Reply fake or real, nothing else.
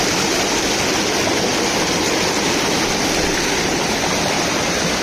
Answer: real